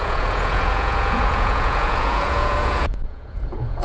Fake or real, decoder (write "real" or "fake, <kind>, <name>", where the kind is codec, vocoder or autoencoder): fake, vocoder, Vocos